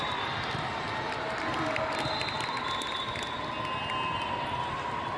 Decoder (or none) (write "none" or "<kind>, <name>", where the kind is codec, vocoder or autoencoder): none